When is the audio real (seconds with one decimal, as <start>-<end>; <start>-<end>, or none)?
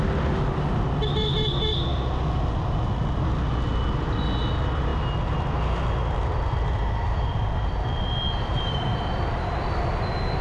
0.0-10.4